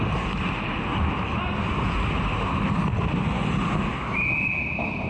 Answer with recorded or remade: recorded